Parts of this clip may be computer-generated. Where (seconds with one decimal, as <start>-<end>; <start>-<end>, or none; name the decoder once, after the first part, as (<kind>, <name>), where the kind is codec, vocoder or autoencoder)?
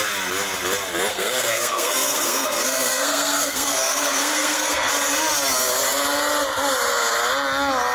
1.1-4.9 (codec, SNAC)